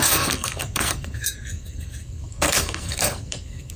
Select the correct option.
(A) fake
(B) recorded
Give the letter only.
A